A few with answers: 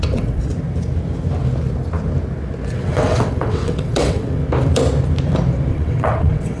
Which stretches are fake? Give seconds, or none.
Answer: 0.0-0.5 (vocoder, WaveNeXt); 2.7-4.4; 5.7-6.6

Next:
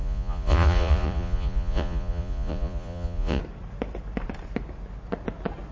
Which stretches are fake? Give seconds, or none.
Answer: 0.0-3.4 (vocoder, Vocos)

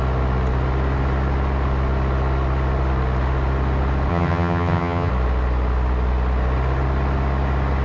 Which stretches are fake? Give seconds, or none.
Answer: 4.1-5.1 (vocoder, HiFi-GAN)

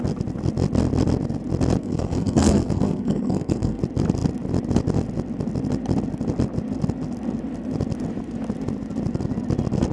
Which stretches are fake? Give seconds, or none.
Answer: 1.8-3.8 (codec, SNAC)

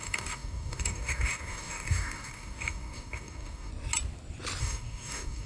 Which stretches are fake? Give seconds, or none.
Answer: 0.0-3.7 (codec, DAC); 4.6-5.5

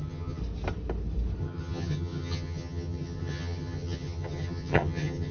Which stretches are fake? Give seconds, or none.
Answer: 0.0-0.4 (vocoder, HiFi-GAN); 1.4-5.3